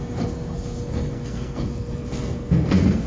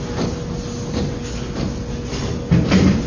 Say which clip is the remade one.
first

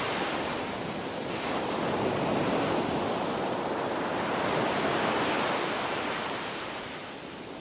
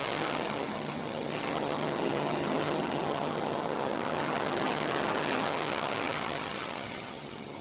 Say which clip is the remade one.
second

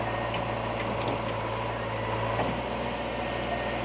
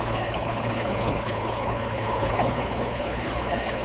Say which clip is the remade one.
second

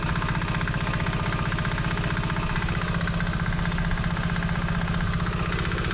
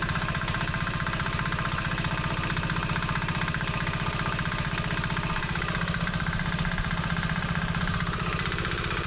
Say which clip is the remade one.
second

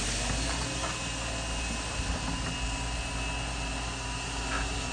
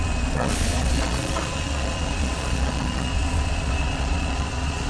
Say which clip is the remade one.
second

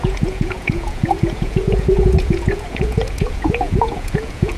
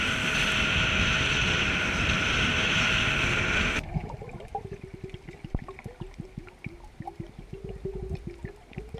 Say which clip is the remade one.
first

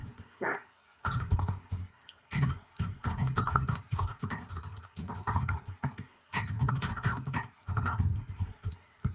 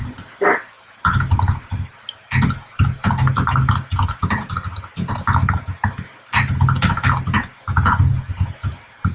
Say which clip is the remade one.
first